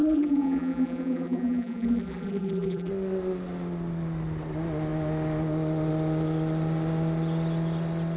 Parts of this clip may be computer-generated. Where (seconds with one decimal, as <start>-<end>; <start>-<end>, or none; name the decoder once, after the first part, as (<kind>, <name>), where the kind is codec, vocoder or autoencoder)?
0.0-2.9 (vocoder, BigVGAN v2)